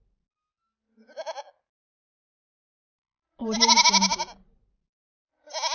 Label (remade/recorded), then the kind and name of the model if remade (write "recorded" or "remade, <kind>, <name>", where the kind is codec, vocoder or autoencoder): recorded